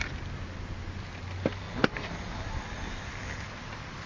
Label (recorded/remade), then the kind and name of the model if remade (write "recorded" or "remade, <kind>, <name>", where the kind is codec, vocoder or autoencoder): recorded